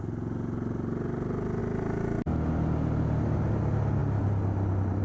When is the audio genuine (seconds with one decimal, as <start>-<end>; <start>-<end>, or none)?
0.0-5.0